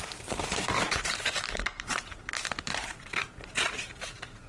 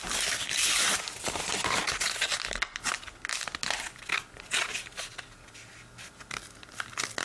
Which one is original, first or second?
second